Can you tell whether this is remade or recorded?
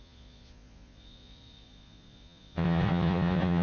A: remade